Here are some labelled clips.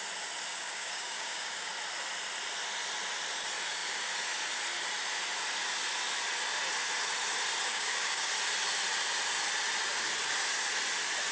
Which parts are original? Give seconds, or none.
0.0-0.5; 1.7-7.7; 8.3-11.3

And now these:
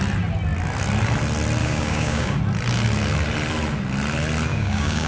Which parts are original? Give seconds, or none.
0.0-1.6; 2.4-4.5

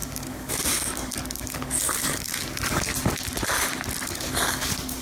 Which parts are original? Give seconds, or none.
2.9-4.0

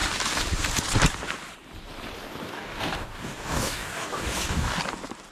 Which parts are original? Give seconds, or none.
0.0-2.4; 4.8-5.3